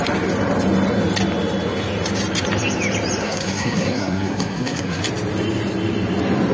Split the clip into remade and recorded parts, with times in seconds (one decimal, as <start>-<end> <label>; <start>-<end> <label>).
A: 0.0-3.2 recorded; 3.2-5.0 remade; 5.0-6.5 recorded